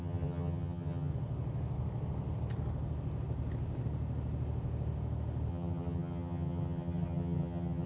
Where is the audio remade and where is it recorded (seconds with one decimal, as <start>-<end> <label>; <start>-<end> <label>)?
0.0-1.1 remade; 1.1-5.5 recorded; 5.5-7.9 remade